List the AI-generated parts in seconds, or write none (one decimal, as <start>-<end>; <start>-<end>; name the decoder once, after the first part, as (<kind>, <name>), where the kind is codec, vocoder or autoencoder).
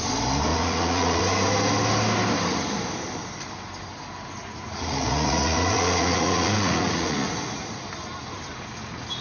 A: 0.5-1.2 (vocoder, Vocos); 4.4-7.6